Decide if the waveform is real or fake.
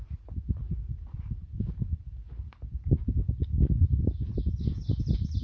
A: real